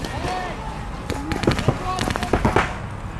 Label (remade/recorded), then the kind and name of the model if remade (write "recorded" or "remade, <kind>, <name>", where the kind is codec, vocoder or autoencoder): recorded